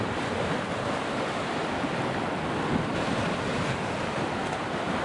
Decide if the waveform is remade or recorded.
recorded